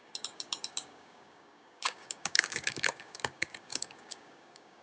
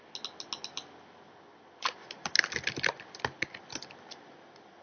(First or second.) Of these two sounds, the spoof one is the first